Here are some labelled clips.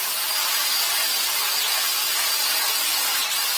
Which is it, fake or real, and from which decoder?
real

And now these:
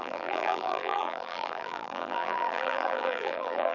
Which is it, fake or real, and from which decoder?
fake, vocoder, BigVGAN v2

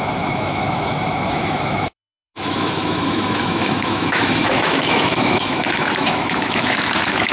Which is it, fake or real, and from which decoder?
fake, autoencoder, DAC-VAE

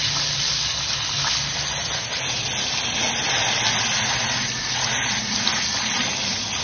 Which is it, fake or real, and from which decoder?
real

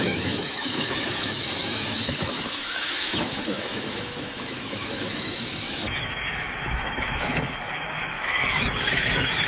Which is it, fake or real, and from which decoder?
fake, autoencoder, DAC-VAE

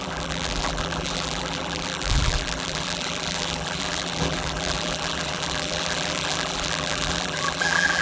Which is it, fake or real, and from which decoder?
fake, vocoder, BigVGAN v2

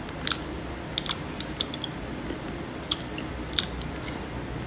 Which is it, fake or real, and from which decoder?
real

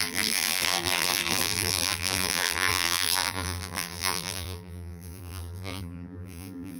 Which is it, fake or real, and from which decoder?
fake, vocoder, BigVGAN v2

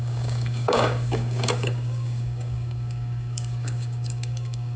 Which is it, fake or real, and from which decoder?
fake, codec, DAC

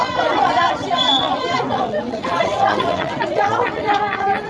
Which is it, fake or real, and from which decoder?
fake, vocoder, WaveNeXt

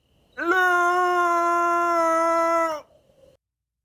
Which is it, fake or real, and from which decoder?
real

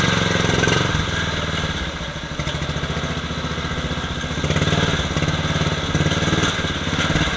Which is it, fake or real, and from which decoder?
real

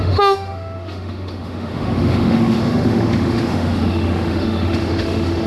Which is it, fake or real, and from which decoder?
fake, autoencoder, DAC-VAE